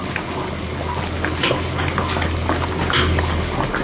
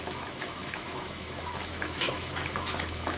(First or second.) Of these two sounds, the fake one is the second